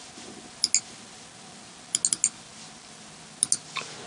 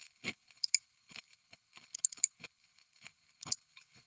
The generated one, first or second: second